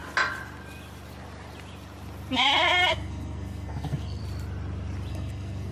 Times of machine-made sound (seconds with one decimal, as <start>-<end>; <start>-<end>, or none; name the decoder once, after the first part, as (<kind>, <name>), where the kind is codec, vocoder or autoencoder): 2.9-4.2 (codec, SNAC); 5.1-5.7